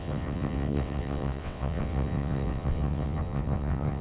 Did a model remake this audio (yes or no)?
yes